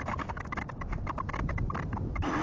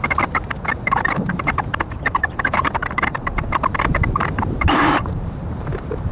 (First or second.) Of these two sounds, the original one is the first